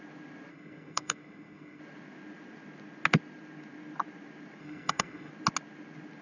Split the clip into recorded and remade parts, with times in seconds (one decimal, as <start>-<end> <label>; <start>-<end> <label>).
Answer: 0.0-0.5 recorded; 0.5-1.8 remade; 1.8-4.6 recorded; 4.6-5.3 remade; 5.3-6.2 recorded